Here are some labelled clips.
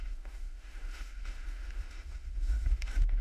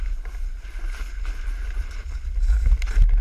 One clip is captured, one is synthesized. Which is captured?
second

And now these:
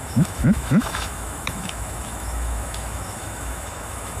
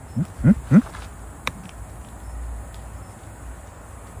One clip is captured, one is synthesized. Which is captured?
second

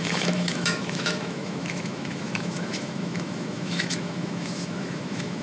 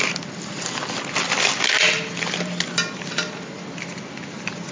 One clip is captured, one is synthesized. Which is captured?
second